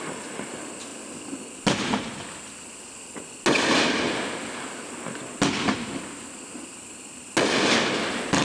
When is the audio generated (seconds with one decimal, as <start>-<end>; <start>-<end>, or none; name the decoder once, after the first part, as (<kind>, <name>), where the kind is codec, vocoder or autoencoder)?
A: none